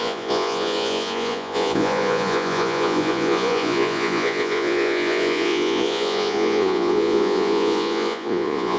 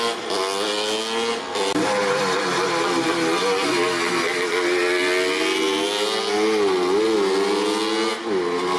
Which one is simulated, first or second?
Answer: first